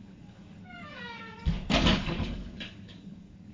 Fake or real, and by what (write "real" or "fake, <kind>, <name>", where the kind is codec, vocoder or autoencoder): fake, codec, DAC